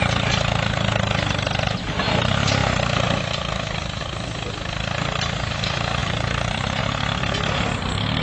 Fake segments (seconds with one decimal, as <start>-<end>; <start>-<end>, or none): 6.0-6.8